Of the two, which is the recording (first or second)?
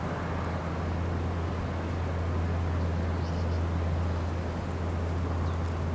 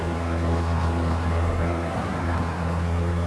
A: first